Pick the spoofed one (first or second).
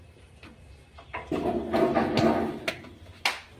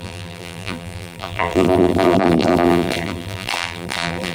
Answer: second